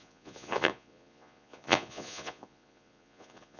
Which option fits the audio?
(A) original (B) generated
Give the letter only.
B